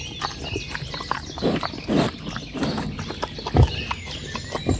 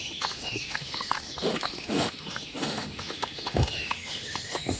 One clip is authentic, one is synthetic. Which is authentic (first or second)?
first